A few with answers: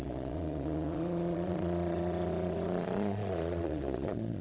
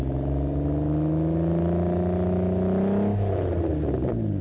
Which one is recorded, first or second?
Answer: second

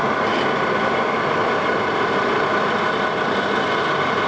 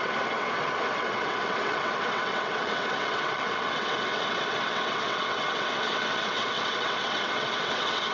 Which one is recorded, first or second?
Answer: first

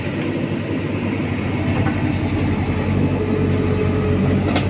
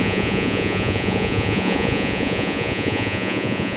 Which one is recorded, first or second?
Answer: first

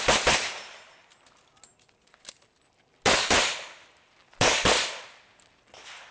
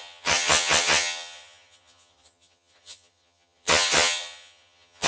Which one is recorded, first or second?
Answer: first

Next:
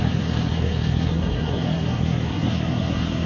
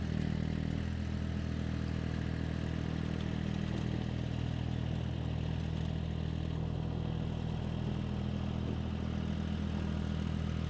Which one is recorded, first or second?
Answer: second